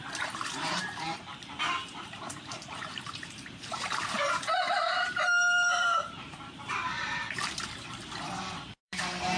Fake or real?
fake